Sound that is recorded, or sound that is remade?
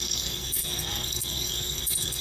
remade